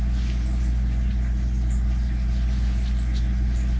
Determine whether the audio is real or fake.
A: real